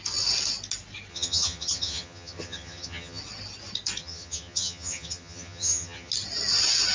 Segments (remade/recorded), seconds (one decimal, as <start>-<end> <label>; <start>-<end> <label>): 0.0-1.1 recorded; 1.1-3.2 remade; 3.2-4.0 recorded; 4.0-6.1 remade; 6.1-6.9 recorded

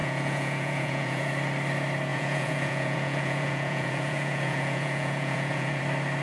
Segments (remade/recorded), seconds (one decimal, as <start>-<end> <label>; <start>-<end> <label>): 0.0-1.3 remade; 1.3-2.1 recorded; 2.1-5.8 remade; 5.8-6.2 recorded